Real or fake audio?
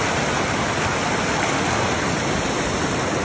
real